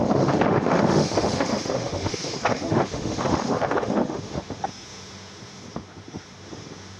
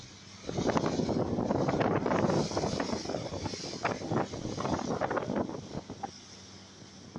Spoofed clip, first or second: first